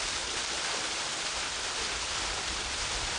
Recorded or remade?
recorded